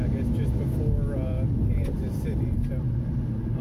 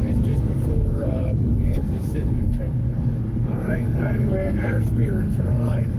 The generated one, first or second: second